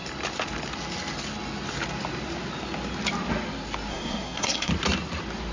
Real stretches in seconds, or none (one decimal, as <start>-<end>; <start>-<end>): 0.0-3.9; 4.7-5.5